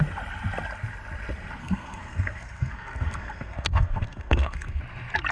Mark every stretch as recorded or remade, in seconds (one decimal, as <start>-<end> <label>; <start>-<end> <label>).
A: 0.0-1.6 recorded; 1.6-4.8 remade; 4.8-5.3 recorded